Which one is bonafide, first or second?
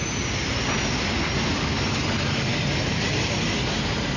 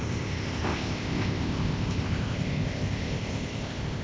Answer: first